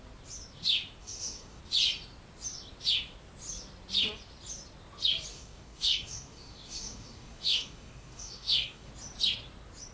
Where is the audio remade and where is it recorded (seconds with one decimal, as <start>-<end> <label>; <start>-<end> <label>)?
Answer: 0.0-1.0 recorded; 1.0-1.6 remade; 1.6-5.3 recorded; 5.3-8.9 remade; 8.9-9.9 recorded